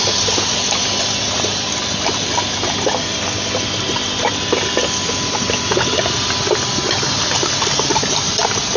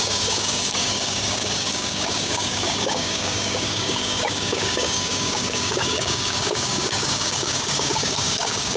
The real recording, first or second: first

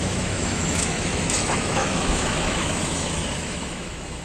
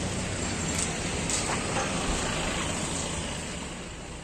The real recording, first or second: second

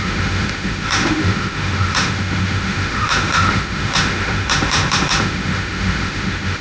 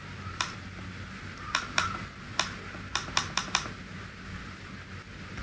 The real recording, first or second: second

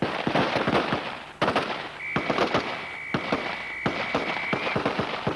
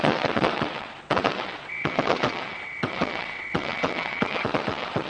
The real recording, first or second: first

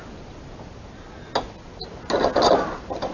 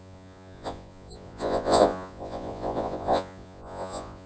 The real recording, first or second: first